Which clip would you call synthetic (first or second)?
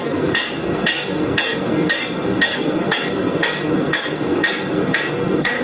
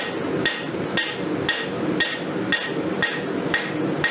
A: first